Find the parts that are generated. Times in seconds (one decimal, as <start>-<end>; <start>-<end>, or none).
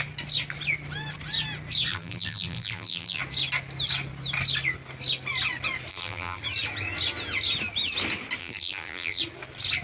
1.9-3.2; 5.9-6.4; 8.4-9.2